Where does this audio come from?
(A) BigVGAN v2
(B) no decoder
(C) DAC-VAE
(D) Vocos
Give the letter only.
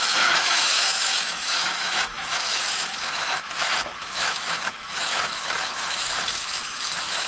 C